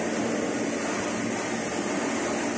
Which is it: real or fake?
real